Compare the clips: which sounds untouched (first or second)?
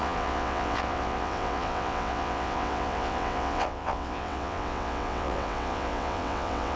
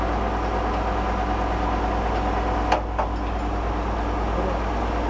second